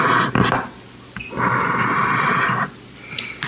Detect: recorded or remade recorded